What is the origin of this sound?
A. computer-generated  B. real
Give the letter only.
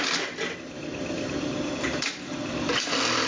B